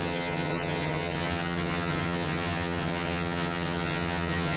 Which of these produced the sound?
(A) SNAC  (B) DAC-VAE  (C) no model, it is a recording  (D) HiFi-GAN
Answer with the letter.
D